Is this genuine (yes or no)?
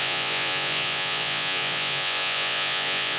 no